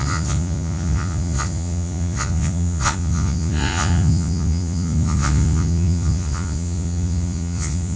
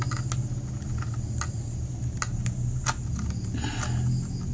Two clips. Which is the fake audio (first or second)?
first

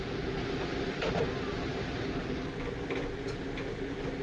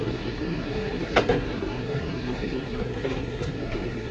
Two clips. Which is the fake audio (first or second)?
second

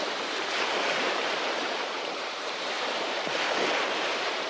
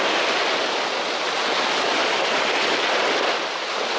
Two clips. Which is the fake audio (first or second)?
first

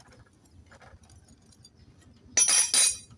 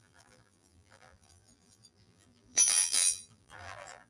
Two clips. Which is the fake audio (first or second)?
second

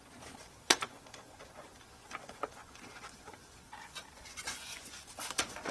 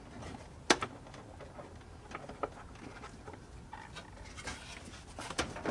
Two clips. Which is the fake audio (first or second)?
first